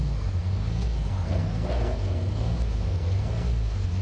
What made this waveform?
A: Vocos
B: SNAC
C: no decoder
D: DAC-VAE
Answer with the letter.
B